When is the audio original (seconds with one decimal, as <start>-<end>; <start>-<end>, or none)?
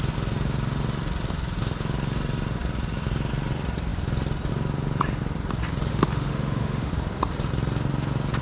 0.0-5.9; 6.9-8.4